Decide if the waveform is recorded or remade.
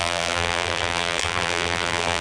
remade